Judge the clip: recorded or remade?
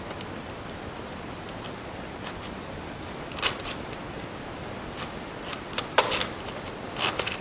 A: remade